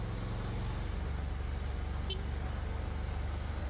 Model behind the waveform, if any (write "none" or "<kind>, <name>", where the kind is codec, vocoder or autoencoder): none